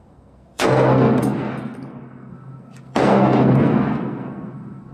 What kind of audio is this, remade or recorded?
remade